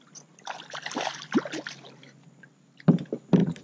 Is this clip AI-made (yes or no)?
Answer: no